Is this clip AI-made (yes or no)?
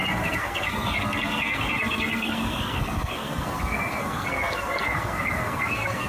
yes